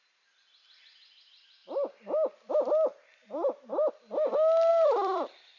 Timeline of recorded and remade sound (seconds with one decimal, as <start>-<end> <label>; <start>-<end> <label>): 0.0-2.9 recorded; 2.9-3.9 remade; 3.9-4.7 recorded; 4.7-5.6 remade